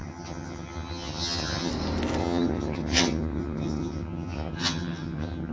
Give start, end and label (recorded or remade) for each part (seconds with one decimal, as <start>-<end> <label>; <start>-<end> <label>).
0.0-1.7 remade; 1.7-2.2 recorded; 2.2-5.5 remade